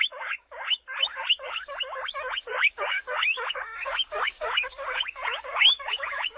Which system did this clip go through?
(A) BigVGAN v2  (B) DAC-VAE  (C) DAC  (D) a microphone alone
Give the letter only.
C